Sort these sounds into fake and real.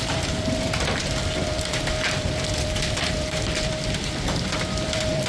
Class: fake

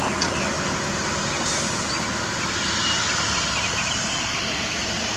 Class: real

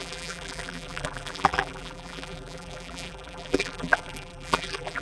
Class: fake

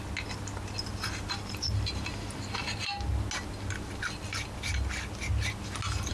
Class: real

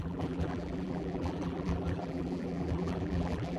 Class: fake